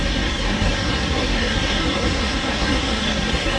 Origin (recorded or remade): remade